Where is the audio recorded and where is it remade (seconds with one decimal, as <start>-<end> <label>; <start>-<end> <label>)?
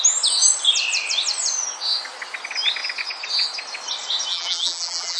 0.0-4.3 recorded; 4.3-5.2 remade